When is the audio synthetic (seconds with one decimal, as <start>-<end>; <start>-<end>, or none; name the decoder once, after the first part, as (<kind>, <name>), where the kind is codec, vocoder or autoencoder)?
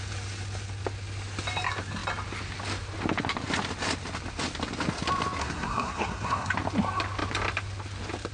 5.4-6.5 (codec, SNAC)